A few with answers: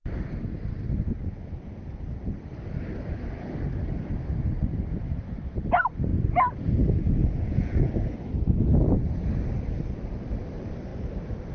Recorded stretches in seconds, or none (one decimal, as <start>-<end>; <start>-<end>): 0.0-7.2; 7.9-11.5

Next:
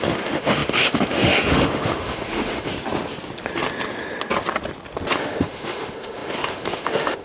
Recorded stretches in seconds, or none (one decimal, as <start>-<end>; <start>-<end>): 2.7-5.1

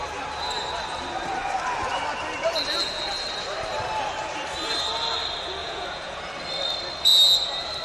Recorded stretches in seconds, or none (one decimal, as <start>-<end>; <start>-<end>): 0.0-5.6; 6.2-7.8

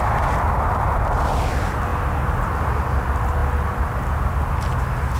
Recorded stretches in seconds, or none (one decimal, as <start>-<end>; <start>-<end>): 0.0-5.2